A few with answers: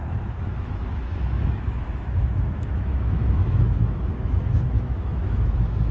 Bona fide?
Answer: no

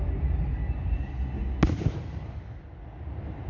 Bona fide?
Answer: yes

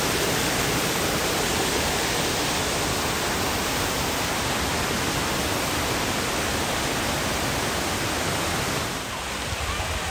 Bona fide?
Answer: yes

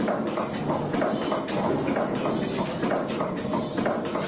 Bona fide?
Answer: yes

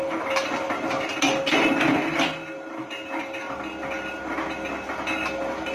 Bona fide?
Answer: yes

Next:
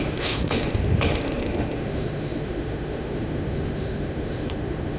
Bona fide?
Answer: no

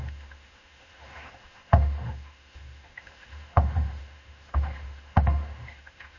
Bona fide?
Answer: no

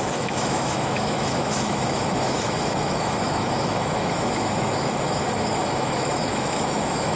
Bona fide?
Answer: no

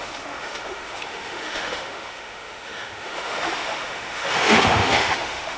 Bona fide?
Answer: no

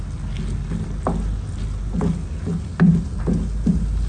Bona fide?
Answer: yes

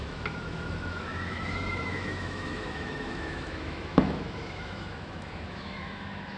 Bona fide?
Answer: no